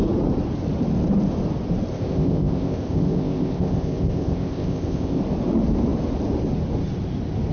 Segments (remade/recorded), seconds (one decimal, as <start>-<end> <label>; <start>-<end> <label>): 0.0-1.9 recorded; 1.9-5.2 remade; 5.2-7.5 recorded